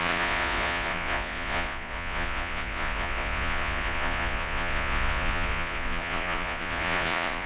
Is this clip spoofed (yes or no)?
yes